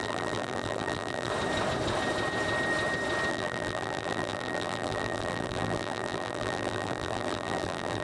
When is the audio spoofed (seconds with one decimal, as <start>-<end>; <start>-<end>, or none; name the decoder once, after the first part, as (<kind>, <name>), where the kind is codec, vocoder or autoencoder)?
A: 0.0-1.3 (vocoder, BigVGAN v2); 3.3-8.0